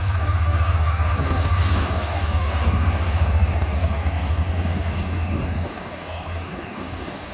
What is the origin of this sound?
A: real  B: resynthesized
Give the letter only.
B